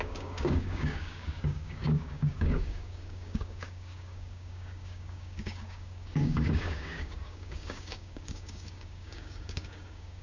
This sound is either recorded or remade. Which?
remade